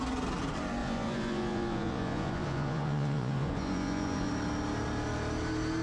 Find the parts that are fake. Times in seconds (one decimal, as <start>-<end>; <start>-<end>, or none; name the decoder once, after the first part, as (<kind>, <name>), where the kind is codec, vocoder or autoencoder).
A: 0.8-4.3 (vocoder, Vocos)